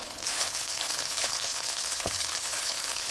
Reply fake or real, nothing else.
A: fake